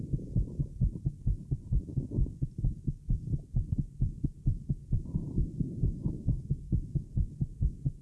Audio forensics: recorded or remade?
recorded